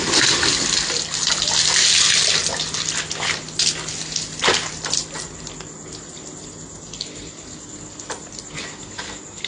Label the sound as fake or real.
real